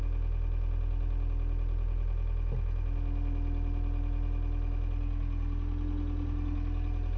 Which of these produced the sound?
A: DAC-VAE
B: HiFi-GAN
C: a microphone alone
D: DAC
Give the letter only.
C